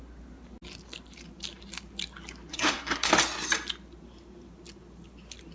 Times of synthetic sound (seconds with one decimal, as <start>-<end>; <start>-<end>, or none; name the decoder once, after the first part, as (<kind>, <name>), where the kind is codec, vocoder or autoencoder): 2.5-3.1 (codec, SNAC)